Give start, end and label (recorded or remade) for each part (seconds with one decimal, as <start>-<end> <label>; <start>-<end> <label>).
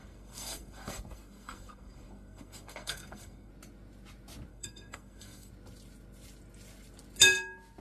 0.0-3.5 remade; 3.5-4.5 recorded; 4.5-5.5 remade; 5.5-7.8 recorded